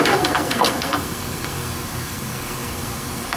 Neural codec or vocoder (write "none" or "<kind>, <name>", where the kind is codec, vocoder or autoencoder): codec, SNAC